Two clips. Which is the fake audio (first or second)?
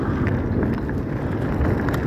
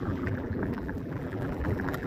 second